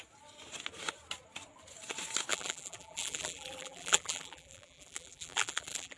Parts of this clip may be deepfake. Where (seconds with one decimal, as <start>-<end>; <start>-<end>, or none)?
2.3-6.0